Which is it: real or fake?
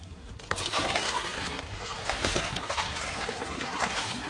fake